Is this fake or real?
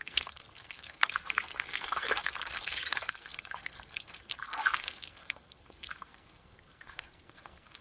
fake